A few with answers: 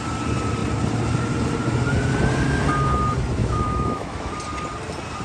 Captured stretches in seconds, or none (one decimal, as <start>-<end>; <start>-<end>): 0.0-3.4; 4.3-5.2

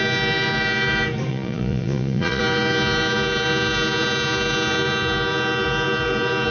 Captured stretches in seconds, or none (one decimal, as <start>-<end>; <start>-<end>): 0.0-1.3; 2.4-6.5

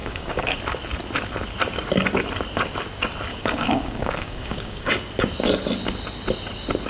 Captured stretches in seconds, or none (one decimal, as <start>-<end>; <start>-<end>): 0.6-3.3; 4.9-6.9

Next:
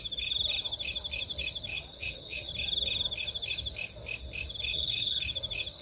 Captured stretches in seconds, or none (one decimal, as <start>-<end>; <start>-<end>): 0.0-1.7; 2.5-4.7; 5.2-5.8

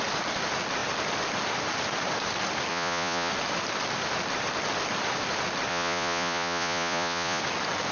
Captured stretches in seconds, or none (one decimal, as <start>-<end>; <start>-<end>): 0.0-2.7; 3.3-5.7; 7.4-7.9